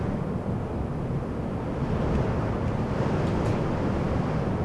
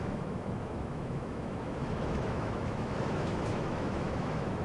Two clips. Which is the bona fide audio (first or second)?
first